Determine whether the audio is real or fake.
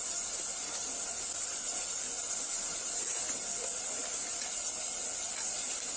real